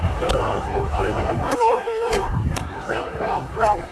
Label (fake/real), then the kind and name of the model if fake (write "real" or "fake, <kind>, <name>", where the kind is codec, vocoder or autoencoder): fake, codec, SNAC